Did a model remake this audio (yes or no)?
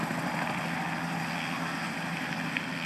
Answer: no